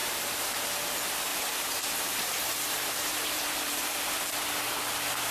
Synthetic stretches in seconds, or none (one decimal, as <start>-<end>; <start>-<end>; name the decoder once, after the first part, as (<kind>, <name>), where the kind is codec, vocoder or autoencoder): 0.0-0.7 (vocoder, BigVGAN v2); 1.3-4.1